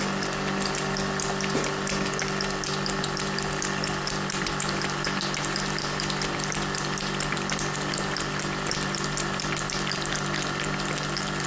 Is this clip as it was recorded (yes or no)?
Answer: yes